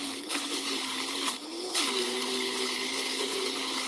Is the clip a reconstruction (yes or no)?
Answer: yes